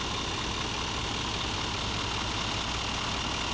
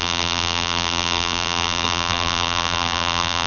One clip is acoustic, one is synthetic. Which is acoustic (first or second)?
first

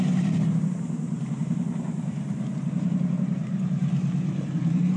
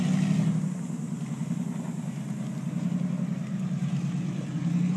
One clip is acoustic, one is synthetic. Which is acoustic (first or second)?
second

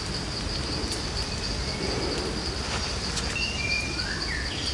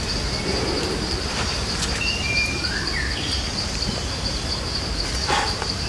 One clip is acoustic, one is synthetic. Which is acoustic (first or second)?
first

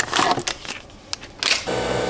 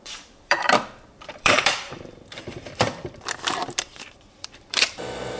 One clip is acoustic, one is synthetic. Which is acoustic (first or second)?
first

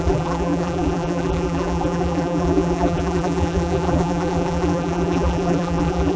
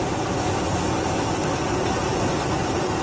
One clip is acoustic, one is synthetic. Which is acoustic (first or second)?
second